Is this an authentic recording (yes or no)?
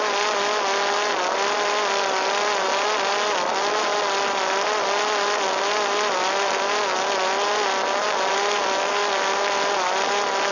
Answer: yes